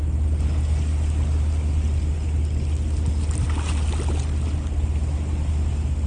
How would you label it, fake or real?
real